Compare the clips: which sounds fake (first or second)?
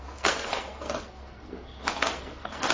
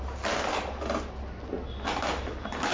first